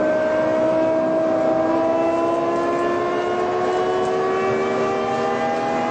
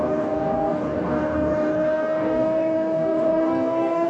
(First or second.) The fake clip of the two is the second